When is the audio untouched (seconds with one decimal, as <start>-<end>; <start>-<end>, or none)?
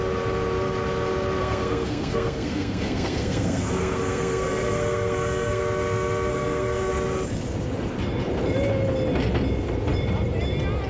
0.0-1.4; 5.6-6.3; 6.9-10.9